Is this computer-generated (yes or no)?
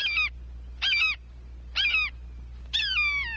no